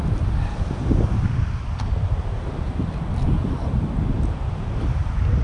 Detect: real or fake real